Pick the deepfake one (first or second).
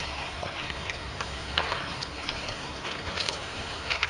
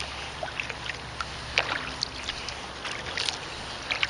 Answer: first